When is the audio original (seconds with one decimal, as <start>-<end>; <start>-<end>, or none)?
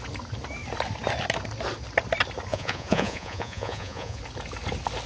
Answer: 0.0-2.5; 4.2-5.1